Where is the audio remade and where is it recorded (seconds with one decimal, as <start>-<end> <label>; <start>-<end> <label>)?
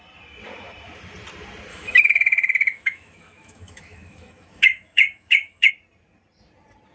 0.0-1.7 recorded; 1.7-5.7 remade; 5.7-6.9 recorded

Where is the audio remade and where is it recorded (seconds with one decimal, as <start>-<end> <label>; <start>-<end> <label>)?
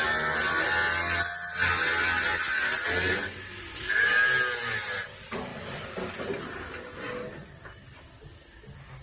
0.0-9.0 recorded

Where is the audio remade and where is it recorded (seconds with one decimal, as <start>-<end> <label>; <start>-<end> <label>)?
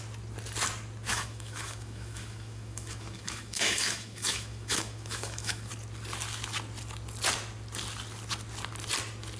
0.0-1.1 recorded; 1.1-5.7 remade; 5.7-9.4 recorded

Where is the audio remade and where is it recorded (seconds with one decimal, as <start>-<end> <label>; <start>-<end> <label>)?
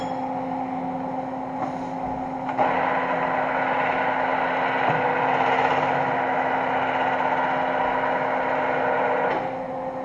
0.0-10.0 recorded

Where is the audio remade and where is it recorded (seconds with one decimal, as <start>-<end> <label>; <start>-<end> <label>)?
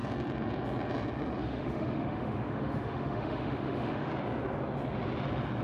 0.0-1.4 recorded; 1.4-4.1 remade; 4.1-5.6 recorded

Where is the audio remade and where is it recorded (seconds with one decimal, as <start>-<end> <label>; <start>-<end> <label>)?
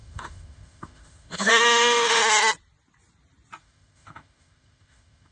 0.0-2.2 remade; 2.2-3.6 recorded; 3.6-5.3 remade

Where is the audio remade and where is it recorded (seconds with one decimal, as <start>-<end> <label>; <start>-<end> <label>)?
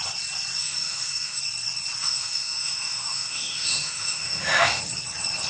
0.0-0.6 recorded; 0.6-1.4 remade; 1.4-2.0 recorded; 2.0-4.8 remade; 4.8-5.5 recorded